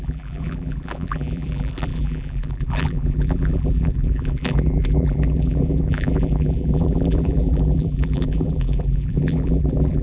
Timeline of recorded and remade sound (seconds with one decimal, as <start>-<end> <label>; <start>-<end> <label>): 0.0-10.0 remade